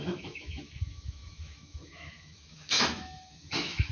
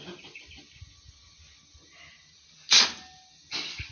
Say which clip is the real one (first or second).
second